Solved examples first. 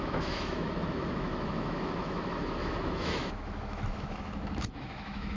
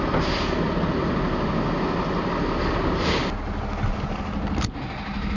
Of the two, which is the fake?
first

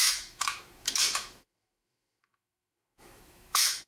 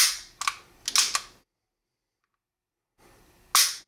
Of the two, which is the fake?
first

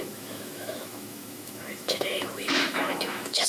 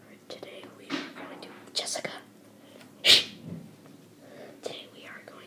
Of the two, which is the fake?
first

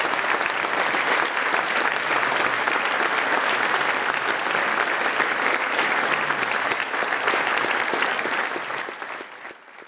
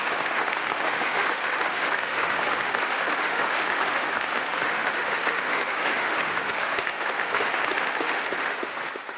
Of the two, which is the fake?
second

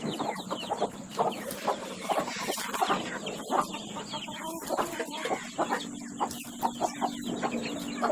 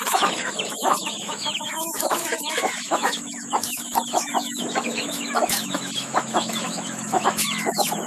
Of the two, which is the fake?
second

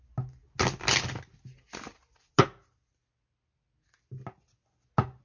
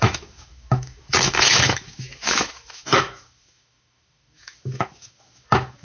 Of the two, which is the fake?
second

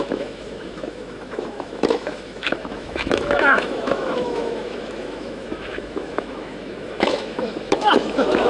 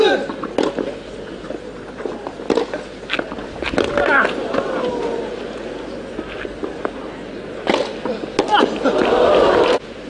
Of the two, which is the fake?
first